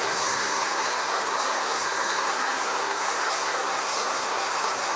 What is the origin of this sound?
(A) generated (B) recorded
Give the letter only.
A